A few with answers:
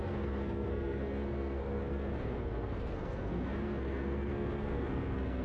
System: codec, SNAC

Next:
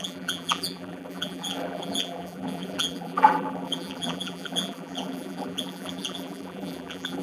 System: vocoder, BigVGAN v2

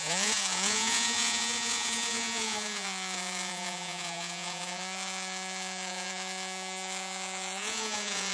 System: vocoder, Vocos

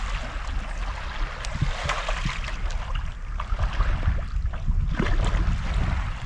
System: none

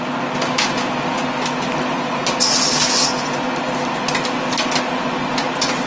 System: none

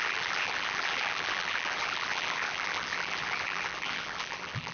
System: vocoder, BigVGAN v2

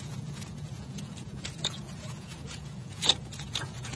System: vocoder, Vocos